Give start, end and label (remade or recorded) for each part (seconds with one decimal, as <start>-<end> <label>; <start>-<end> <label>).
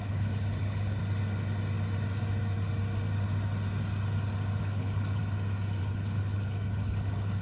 0.0-1.0 remade; 1.0-4.6 recorded; 4.6-5.2 remade; 5.2-5.8 recorded; 5.8-7.4 remade